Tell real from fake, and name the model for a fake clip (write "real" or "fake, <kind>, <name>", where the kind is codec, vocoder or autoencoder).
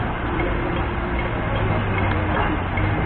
real